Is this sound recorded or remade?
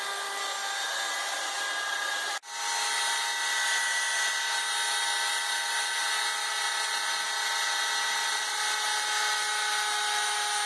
recorded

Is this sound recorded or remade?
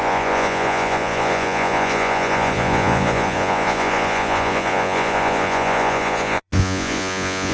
remade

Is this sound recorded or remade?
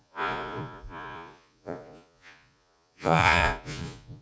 remade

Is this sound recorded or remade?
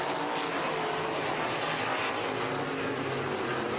recorded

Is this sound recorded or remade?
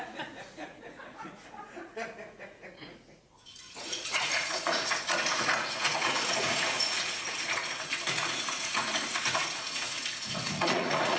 remade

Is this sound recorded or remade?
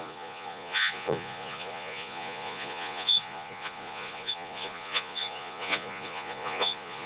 remade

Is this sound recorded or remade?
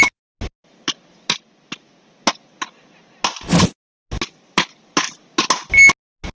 recorded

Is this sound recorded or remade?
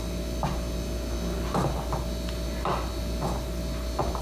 recorded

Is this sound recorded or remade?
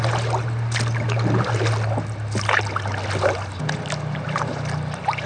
recorded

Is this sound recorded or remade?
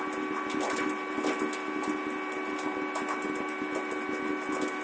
recorded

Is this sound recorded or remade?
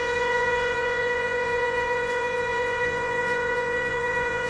remade